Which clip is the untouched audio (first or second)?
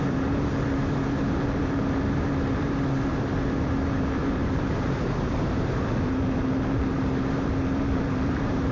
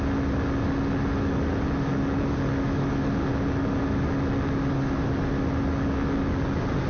second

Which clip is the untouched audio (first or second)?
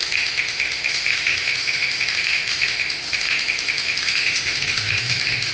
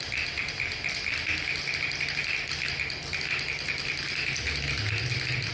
second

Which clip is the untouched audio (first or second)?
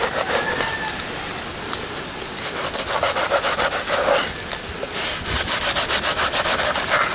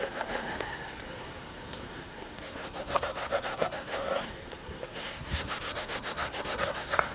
first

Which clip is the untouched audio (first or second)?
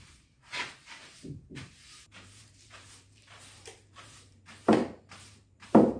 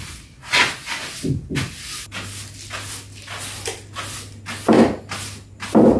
second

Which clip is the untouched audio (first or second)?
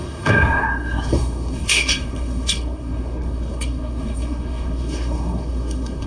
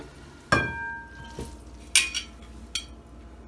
second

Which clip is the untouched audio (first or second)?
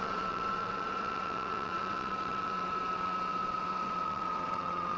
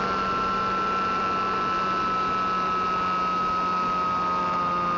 second